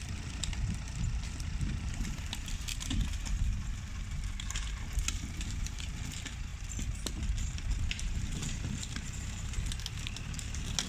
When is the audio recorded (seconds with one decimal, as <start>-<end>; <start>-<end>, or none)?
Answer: 0.0-10.9